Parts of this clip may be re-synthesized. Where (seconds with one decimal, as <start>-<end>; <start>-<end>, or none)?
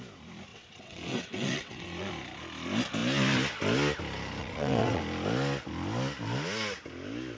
0.5-2.1; 4.4-5.0